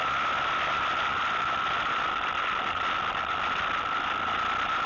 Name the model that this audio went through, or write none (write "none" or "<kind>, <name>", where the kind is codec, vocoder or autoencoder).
none